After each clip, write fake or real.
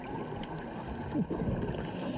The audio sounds real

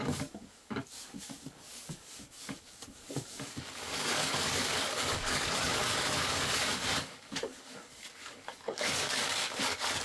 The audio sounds fake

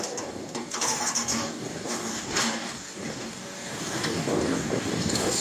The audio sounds fake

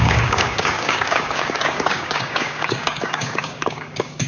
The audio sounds fake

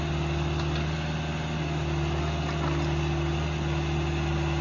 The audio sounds real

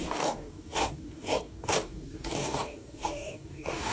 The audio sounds fake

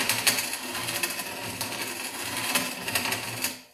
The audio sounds real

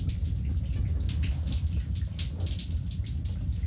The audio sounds real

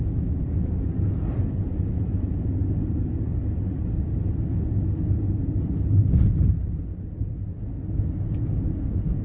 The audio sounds real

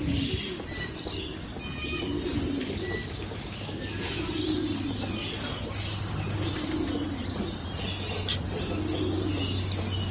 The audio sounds real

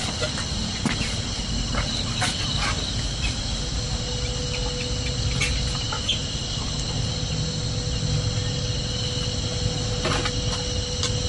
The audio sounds real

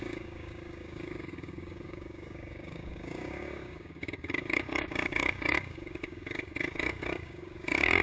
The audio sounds fake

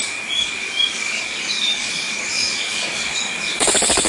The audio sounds fake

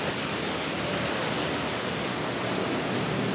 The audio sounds real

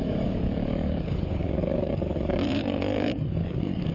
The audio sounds fake